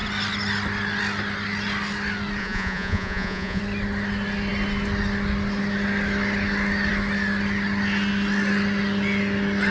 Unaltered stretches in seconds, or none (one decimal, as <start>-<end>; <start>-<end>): 0.0-2.4; 3.6-9.7

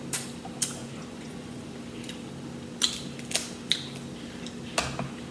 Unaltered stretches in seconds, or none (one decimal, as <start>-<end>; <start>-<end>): 0.0-0.8; 1.7-5.3

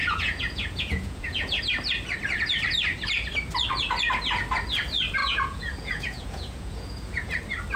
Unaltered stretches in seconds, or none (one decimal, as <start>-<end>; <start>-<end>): 1.6-5.2; 7.3-7.8

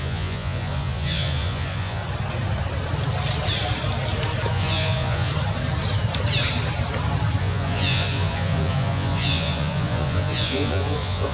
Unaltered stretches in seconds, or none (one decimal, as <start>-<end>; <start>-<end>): 2.0-4.5; 5.3-7.4

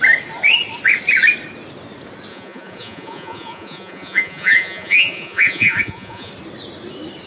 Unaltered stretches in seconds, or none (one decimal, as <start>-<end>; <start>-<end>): 0.0-2.3; 6.3-7.3